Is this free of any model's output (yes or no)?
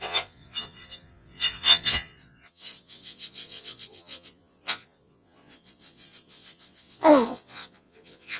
no